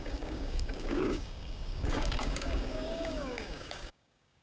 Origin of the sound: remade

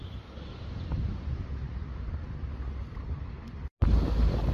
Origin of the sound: recorded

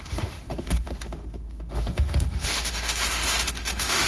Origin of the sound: remade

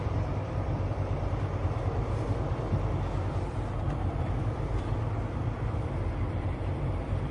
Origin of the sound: remade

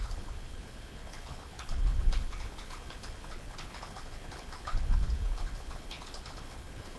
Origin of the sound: remade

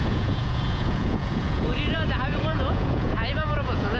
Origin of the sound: remade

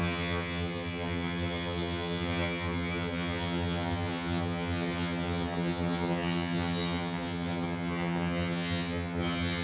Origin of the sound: remade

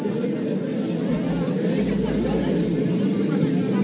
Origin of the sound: recorded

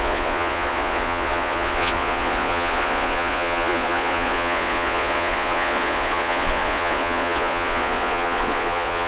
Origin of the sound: remade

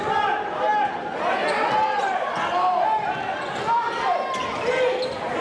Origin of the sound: recorded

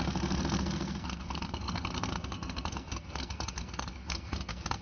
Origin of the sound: remade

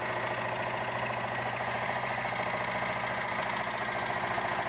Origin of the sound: remade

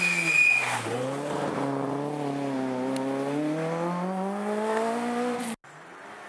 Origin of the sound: recorded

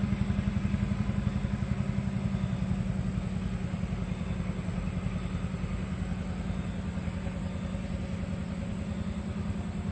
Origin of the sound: recorded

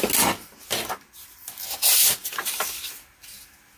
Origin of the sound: recorded